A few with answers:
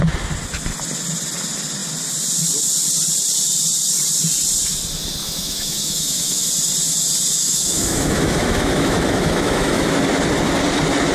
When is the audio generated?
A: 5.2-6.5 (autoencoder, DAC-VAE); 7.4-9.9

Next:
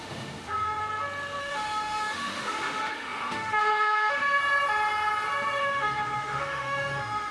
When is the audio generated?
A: 0.0-0.8 (autoencoder, DAC-VAE); 1.4-4.4; 5.6-7.3

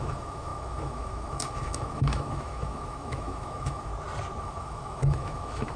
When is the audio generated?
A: 0.0-3.9 (autoencoder, DAC-VAE); 4.4-5.8

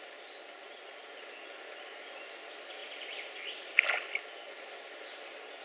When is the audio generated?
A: none

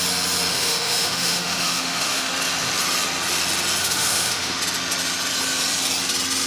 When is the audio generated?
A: 0.5-2.3 (autoencoder, DAC-VAE); 3.8-4.6

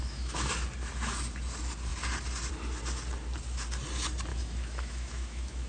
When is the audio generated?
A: 0.0-0.5 (autoencoder, DAC-VAE); 4.3-5.7

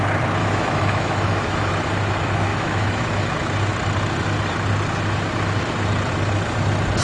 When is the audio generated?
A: 0.4-1.7 (autoencoder, DAC-VAE); 2.5-3.1